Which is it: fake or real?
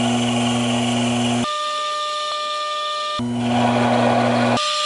real